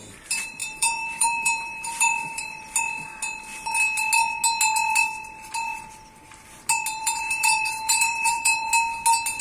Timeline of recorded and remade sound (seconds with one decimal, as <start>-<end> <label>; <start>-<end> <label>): 0.0-0.6 recorded; 0.6-2.4 remade; 2.4-7.0 recorded; 7.0-8.7 remade; 8.7-9.4 recorded